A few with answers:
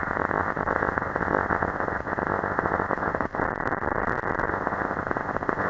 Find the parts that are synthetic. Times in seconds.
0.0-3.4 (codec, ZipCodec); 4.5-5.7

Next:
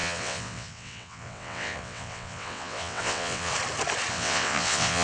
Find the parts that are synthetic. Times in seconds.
0.0-3.5 (vocoder, WaveNeXt); 4.1-5.0